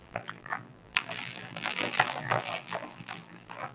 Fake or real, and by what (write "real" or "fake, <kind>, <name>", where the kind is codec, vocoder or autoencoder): fake, vocoder, BigVGAN v2